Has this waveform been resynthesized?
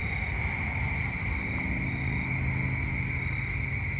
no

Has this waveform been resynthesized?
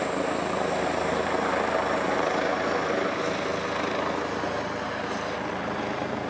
no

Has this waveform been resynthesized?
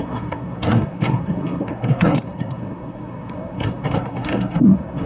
yes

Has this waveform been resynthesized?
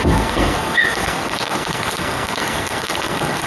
yes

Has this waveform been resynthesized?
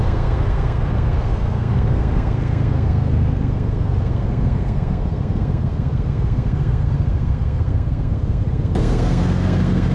yes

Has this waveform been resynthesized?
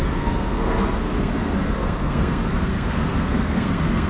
yes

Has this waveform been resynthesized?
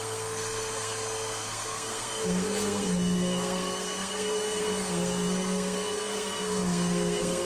yes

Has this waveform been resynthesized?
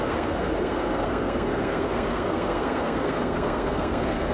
yes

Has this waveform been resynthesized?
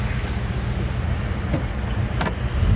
no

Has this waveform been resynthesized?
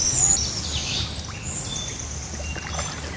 no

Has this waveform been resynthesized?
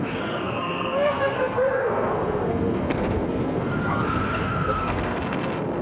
yes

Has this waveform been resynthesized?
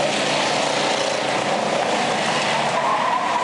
no